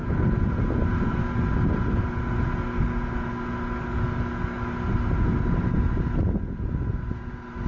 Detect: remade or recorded recorded